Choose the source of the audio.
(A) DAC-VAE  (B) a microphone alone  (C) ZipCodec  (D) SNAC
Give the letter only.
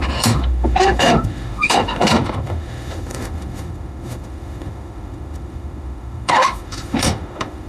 A